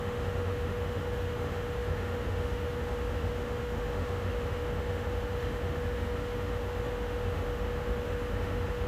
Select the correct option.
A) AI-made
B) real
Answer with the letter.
A